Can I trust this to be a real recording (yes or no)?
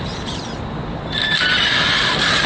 yes